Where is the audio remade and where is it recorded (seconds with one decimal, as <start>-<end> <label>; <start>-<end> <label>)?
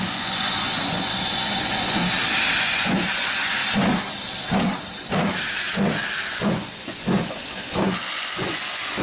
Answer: 0.0-2.0 remade; 2.0-2.6 recorded; 2.6-3.6 remade; 3.6-6.2 recorded; 6.2-9.0 remade